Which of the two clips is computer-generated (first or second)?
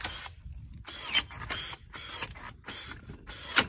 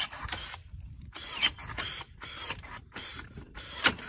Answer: second